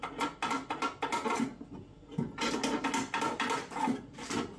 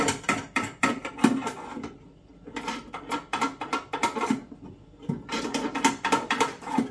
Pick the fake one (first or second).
second